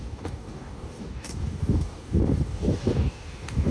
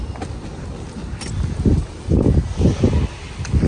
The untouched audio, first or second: second